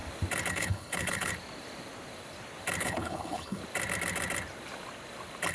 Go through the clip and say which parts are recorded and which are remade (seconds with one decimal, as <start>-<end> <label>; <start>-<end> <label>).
0.0-0.5 recorded; 0.5-1.3 remade; 1.3-2.8 recorded; 2.8-3.6 remade; 3.6-5.5 recorded